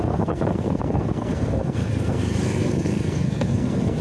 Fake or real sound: fake